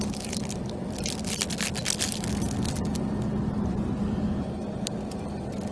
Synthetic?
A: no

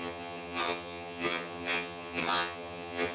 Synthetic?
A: yes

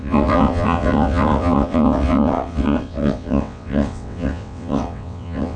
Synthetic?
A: yes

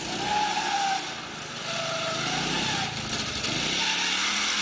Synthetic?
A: no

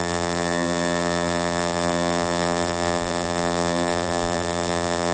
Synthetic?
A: yes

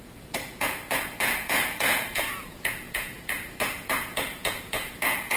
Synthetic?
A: yes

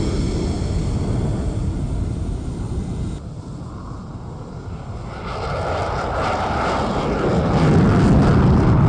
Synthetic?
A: no